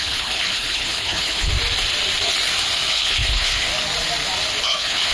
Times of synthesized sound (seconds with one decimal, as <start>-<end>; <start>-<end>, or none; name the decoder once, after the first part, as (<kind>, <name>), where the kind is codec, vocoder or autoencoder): 0.0-1.5 (codec, HILCodec); 2.9-3.7; 4.6-5.1